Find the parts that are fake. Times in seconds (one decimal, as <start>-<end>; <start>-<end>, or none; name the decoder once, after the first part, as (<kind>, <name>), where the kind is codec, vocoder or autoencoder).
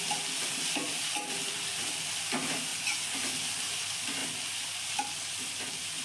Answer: 0.0-2.7 (vocoder, BigVGAN v2); 3.3-6.0